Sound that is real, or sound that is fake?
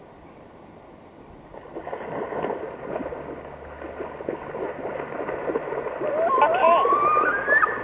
real